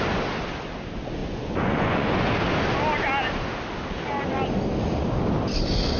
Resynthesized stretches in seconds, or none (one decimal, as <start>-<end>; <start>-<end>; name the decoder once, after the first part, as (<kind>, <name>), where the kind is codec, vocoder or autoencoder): 1.2-2.3 (vocoder, Vocos)